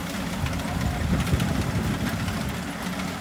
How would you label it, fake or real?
real